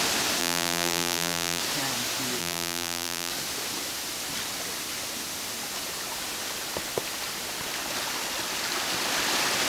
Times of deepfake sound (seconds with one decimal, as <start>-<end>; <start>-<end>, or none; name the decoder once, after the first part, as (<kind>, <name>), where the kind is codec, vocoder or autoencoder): 0.4-1.6 (vocoder, BigVGAN v2); 2.4-3.3